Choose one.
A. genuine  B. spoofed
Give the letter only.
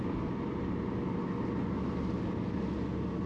A